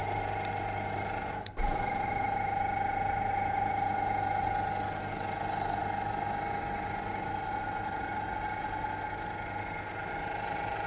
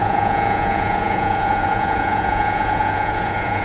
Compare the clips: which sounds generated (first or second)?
second